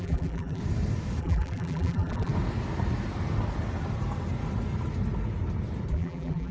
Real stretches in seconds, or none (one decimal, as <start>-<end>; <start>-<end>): 0.6-1.2; 2.3-5.9